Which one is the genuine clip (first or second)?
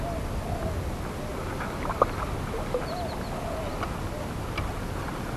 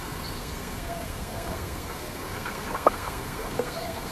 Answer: first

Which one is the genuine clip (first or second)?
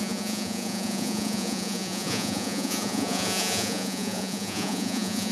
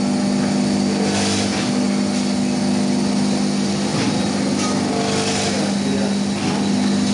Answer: second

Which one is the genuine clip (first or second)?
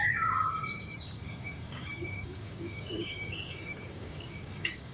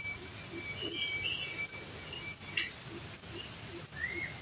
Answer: second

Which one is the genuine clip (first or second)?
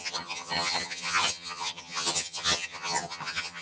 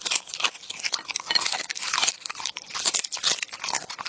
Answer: second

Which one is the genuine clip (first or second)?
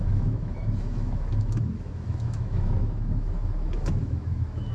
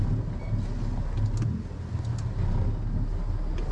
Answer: second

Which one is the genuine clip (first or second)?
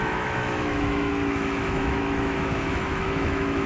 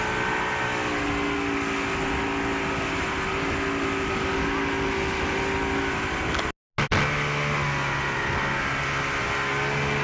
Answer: second